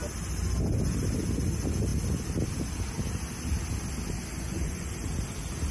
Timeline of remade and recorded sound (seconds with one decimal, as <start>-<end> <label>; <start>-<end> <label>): 0.0-4.3 recorded; 4.3-4.9 remade; 4.9-5.7 recorded